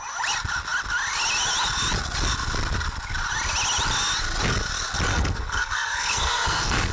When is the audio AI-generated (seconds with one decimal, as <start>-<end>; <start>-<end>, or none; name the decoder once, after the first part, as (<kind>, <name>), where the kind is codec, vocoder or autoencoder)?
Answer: 5.1-6.9 (codec, SNAC)